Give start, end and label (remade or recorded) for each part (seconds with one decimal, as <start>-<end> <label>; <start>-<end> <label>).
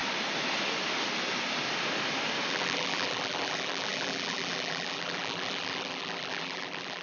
0.0-2.5 recorded; 2.5-7.0 remade